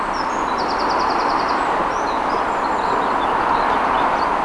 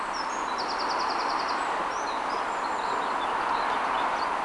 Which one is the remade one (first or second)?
first